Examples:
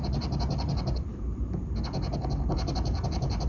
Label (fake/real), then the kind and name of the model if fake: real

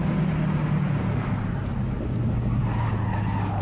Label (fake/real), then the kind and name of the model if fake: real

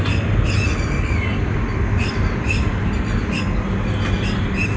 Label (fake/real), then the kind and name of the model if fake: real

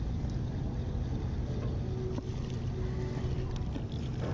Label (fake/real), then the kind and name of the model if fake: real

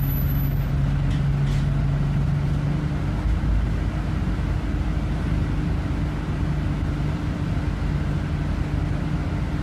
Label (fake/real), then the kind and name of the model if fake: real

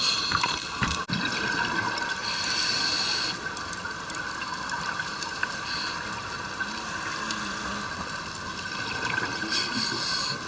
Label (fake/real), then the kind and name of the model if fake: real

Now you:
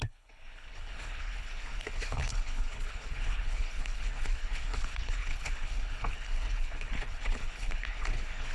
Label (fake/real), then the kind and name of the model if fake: fake, codec, HILCodec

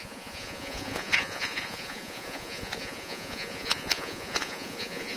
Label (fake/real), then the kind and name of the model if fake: fake, vocoder, Vocos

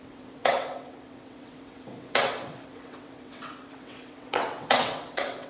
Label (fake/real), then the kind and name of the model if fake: fake, vocoder, WaveNeXt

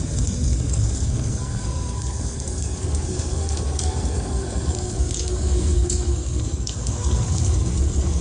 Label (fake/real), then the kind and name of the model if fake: fake, codec, SNAC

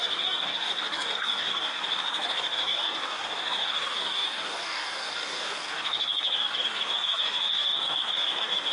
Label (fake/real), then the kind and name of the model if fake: fake, codec, DAC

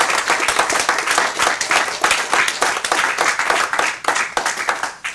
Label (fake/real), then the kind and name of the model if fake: real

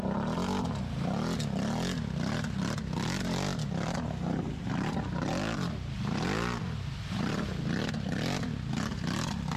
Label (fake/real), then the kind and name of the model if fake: real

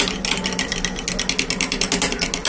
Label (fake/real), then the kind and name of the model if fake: real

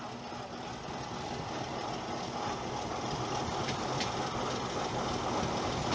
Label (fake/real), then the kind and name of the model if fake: real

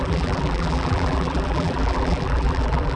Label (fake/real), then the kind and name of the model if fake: fake, vocoder, BigVGAN v2